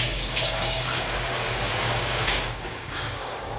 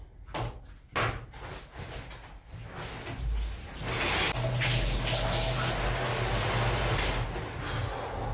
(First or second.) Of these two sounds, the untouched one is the second